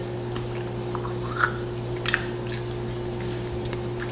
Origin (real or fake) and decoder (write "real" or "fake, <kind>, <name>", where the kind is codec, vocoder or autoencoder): real